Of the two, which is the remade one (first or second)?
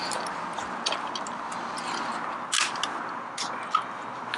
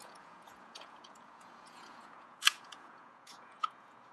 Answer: second